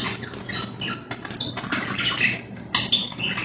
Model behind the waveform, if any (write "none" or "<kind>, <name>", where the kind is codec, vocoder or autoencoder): none